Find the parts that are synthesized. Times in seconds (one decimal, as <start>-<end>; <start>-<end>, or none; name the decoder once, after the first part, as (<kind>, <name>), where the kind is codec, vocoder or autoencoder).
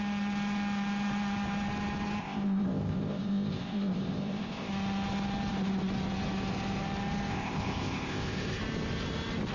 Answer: 2.2-4.7 (codec, ZipCodec); 7.3-8.6